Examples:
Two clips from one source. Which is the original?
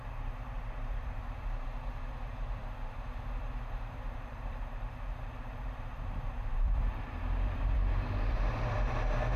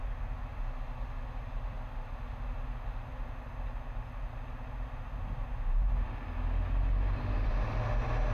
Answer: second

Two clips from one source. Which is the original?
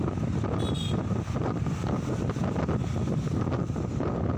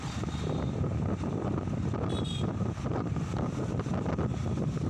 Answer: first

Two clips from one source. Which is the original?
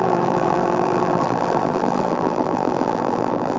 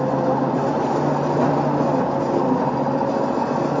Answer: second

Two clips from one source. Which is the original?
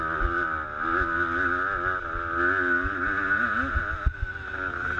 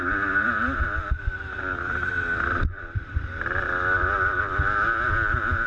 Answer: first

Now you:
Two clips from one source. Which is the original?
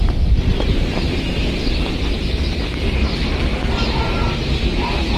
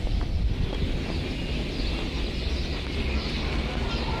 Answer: second